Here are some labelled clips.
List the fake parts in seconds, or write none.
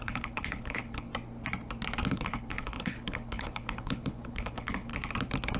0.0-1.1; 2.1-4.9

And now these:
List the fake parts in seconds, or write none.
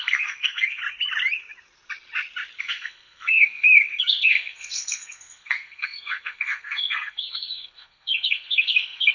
0.0-0.8; 2.6-9.1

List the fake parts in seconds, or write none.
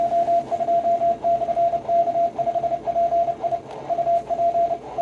none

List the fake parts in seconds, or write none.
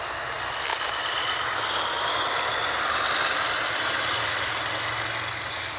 none